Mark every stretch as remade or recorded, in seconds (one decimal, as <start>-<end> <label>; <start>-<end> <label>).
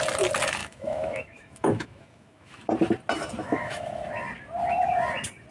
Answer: 0.0-0.6 recorded; 0.6-2.7 remade; 2.7-3.4 recorded; 3.4-4.1 remade; 4.1-5.5 recorded